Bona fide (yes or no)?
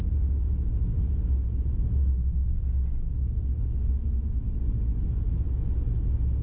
yes